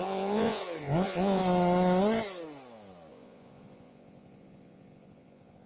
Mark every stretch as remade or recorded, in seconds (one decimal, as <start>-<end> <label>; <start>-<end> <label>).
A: 0.0-1.4 remade; 1.4-3.1 recorded; 3.1-5.7 remade